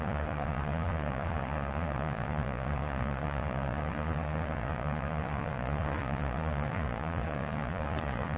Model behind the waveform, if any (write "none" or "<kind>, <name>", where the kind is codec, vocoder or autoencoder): vocoder, Vocos